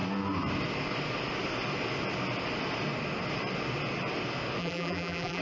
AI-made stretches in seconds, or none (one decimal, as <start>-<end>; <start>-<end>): 4.6-5.4